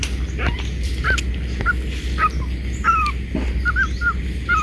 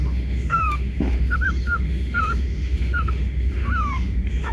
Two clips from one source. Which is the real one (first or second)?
first